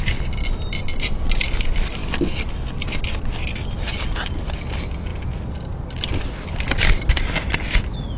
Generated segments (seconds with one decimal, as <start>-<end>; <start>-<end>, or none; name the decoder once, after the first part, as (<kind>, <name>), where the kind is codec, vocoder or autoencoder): none